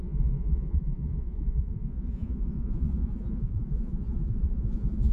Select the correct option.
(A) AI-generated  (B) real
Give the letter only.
A